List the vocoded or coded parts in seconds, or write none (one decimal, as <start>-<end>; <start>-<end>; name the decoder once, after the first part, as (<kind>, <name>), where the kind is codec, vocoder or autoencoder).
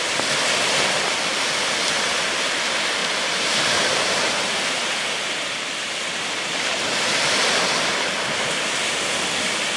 3.0-7.0 (vocoder, BigVGAN v2)